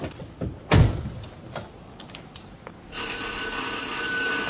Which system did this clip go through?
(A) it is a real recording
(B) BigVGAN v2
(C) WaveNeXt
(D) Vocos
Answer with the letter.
A